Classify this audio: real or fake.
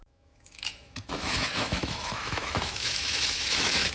fake